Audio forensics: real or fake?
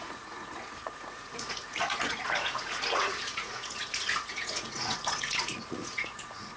fake